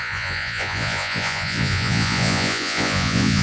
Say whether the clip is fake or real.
fake